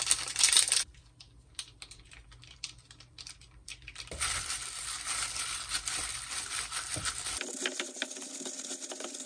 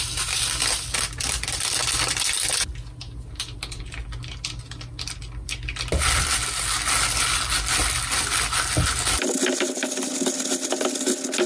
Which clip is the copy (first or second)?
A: first